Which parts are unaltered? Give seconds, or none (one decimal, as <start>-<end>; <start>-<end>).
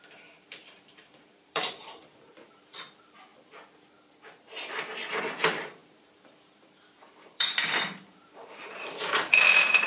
3.3-5.2